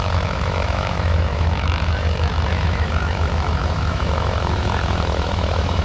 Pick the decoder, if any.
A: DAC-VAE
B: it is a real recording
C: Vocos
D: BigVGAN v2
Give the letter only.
A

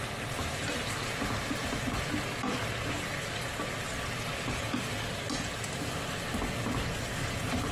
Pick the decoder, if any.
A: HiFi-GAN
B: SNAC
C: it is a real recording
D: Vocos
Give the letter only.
C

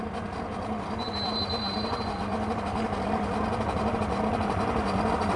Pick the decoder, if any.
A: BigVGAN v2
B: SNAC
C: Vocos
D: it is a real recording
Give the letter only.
D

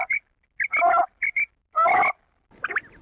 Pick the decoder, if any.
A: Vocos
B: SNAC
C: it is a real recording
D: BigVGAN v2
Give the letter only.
C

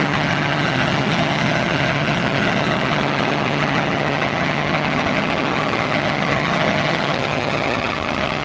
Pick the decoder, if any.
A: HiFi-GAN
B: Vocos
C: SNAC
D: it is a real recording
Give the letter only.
A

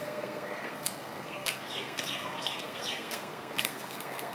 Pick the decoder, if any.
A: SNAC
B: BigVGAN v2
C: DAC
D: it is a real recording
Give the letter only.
A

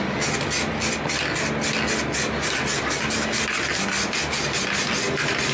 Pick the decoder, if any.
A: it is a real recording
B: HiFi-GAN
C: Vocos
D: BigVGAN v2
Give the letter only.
A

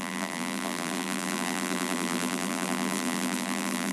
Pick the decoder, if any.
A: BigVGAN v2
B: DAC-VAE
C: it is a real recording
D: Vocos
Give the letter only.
A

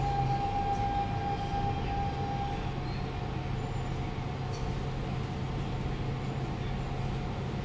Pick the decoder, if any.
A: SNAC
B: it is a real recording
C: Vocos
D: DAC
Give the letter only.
B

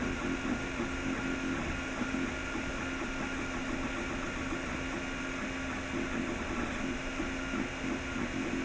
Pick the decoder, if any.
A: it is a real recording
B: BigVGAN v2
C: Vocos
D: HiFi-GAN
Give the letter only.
A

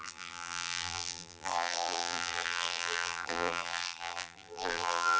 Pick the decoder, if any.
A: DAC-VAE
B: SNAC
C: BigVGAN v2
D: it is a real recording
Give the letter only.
C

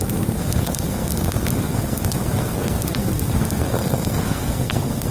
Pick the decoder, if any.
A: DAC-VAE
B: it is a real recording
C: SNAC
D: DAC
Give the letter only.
C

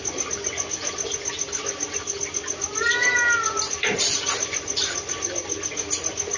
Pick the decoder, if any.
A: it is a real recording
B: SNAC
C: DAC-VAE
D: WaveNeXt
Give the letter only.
A